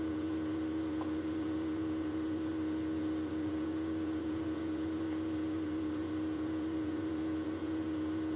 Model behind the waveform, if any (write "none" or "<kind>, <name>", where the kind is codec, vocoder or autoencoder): vocoder, Vocos